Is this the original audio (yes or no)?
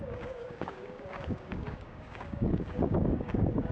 no